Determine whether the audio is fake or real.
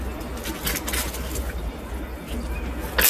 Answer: real